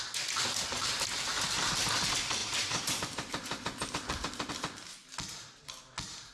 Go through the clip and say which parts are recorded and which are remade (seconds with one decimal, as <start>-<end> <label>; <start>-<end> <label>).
0.0-2.4 recorded; 2.4-4.5 remade; 4.5-6.3 recorded